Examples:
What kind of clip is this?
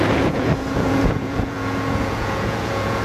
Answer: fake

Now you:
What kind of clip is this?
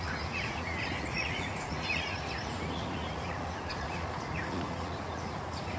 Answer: fake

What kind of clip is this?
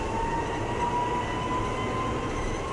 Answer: real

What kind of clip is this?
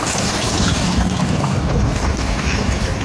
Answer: fake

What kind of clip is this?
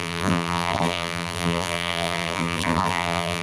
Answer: fake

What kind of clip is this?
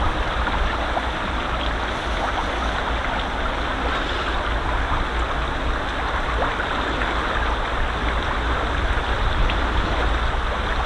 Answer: real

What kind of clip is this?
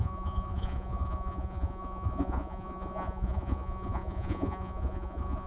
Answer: fake